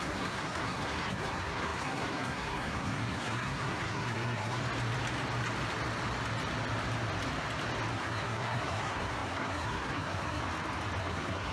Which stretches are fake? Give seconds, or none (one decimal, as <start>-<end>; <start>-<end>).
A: 0.0-4.6; 7.9-10.4; 11.0-11.5